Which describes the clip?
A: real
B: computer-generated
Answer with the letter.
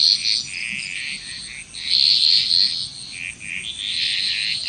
A